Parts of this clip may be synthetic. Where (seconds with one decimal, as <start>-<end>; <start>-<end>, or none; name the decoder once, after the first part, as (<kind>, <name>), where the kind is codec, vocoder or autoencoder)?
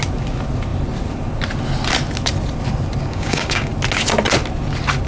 3.0-3.7 (codec, DAC)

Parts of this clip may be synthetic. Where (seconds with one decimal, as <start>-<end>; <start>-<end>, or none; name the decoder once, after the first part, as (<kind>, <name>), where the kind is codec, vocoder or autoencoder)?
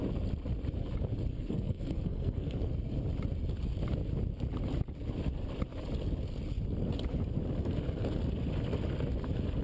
1.3-2.7 (codec, SNAC)